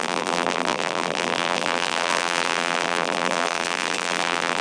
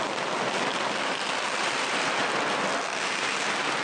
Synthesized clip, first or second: first